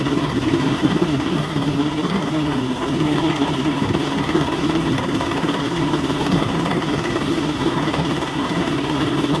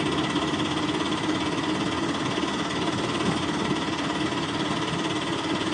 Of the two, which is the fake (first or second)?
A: first